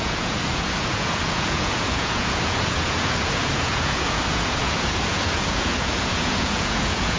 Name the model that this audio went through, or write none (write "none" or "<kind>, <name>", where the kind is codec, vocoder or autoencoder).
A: vocoder, Vocos